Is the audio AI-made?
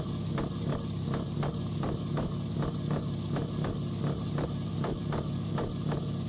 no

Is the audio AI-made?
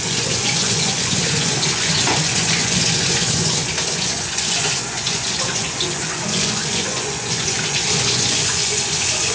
yes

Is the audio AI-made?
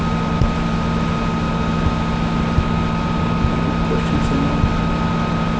no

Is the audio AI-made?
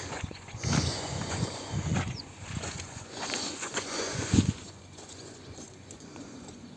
yes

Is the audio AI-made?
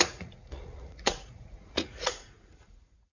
yes